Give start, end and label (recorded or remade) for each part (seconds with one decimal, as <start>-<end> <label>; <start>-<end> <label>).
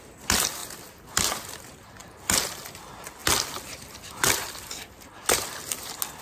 0.0-6.2 recorded